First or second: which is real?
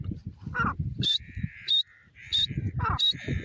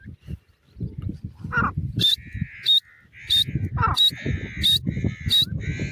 second